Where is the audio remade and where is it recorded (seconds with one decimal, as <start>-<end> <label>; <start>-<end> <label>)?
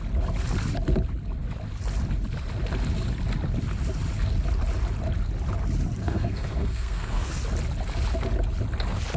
0.0-6.0 recorded; 6.0-7.3 remade; 7.3-9.2 recorded